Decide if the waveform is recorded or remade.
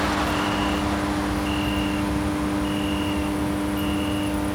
recorded